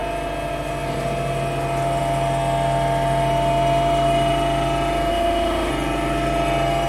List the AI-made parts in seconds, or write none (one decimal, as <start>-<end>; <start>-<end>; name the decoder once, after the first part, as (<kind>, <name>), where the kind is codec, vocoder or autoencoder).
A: 5.1-5.7 (autoencoder, DAC-VAE)